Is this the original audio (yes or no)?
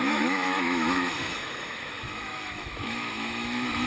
no